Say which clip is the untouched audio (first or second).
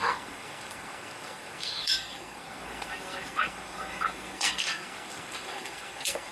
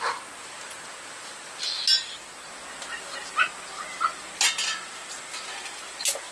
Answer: second